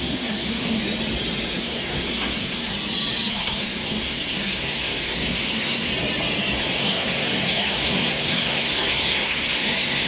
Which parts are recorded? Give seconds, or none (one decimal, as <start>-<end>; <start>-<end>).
0.8-1.6; 2.7-3.3; 5.9-6.6